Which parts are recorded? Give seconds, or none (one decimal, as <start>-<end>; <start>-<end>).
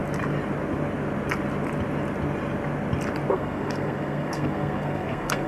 0.0-3.3